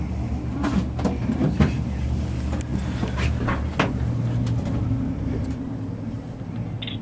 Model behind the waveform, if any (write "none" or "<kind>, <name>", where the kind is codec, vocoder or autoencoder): none